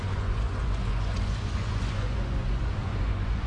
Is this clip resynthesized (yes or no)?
yes